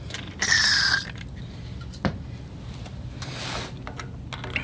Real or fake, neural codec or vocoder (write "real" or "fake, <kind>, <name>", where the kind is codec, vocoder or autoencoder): real